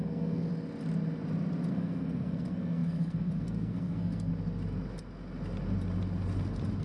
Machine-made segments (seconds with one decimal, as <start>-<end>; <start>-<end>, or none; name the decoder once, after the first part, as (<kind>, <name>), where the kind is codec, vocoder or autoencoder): 0.0-0.5 (codec, SNAC); 1.7-4.3